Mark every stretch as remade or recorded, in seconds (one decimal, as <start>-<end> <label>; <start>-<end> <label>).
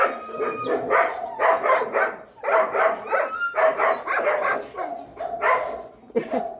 0.0-5.1 recorded; 5.1-5.9 remade; 5.9-6.6 recorded